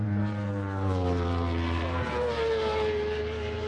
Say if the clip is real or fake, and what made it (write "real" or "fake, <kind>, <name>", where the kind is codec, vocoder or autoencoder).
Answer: fake, vocoder, BigVGAN v2